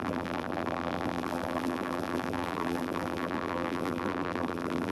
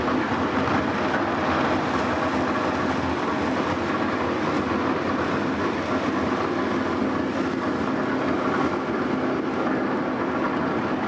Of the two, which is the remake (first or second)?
first